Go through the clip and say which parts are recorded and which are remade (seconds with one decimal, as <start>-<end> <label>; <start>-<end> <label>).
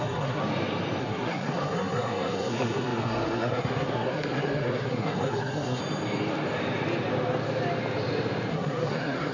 0.0-0.4 remade; 0.4-1.0 recorded; 1.0-5.8 remade; 5.8-8.5 recorded; 8.5-9.3 remade